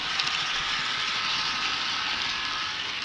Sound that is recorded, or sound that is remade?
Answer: recorded